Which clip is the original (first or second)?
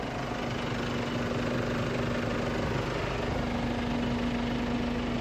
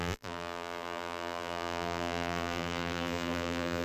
first